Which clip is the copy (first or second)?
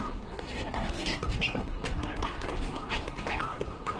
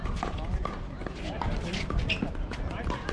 first